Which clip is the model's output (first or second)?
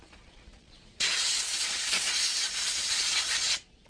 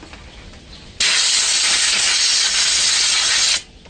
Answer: first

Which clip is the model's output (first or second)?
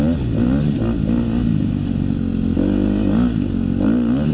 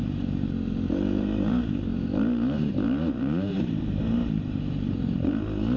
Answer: second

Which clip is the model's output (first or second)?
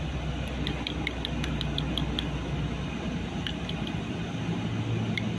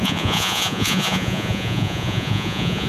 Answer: second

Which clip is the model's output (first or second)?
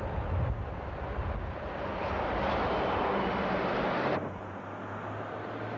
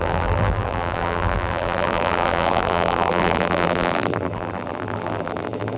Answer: second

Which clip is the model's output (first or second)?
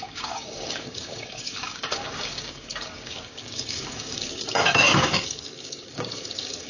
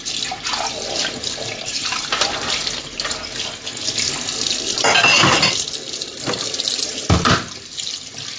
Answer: first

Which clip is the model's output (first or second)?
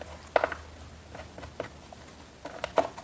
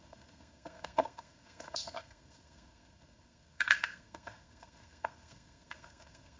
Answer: second